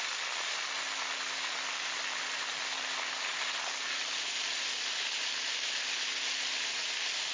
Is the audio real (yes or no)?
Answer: yes